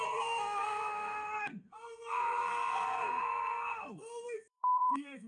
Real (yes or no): no